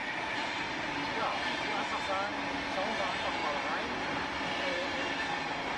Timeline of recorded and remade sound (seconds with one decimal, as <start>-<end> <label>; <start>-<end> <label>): 0.0-1.7 remade; 1.7-5.8 recorded